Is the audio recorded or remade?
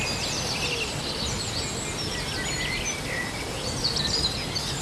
recorded